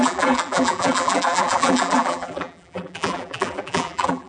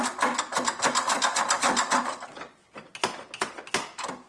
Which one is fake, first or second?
first